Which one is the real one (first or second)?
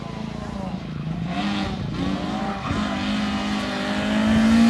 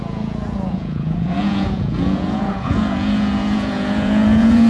first